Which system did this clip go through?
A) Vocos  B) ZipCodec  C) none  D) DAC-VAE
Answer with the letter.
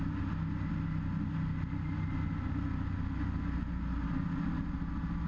C